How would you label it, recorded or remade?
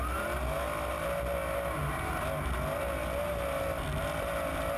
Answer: recorded